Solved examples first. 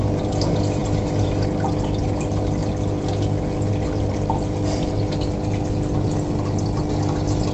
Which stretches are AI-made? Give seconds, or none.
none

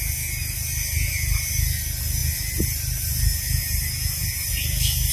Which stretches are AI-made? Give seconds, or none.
none

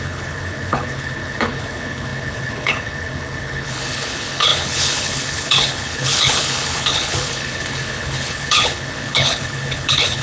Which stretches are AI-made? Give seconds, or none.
0.0-10.2 (codec, HILCodec)

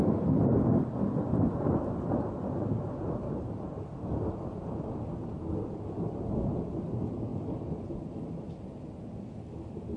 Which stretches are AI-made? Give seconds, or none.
none

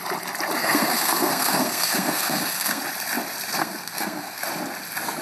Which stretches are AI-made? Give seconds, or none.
0.6-2.8 (codec, SNAC); 3.6-4.4

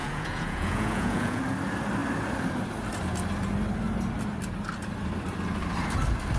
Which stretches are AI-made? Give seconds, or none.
0.0-1.4 (vocoder, Vocos)

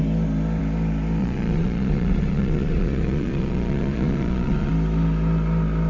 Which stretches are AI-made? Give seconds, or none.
1.2-4.7 (vocoder, Vocos)